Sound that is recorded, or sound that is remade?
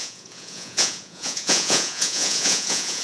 remade